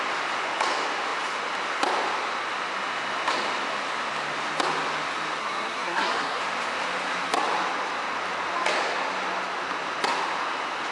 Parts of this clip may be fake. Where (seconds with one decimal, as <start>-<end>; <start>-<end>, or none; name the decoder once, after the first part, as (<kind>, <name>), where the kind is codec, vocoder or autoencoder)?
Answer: 5.4-6.4 (codec, SNAC)

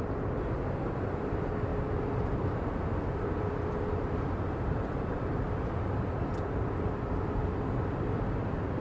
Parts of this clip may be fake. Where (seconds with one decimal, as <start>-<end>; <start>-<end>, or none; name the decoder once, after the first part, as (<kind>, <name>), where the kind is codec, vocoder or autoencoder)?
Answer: 1.7-6.7 (vocoder, BigVGAN v2); 7.4-8.8